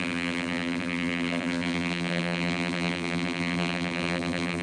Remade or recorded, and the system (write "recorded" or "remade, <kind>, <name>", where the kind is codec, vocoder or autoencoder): remade, vocoder, BigVGAN v2